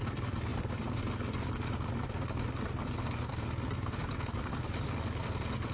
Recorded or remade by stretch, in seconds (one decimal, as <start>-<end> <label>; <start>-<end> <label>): 0.0-0.5 remade; 0.5-3.3 recorded; 3.3-5.7 remade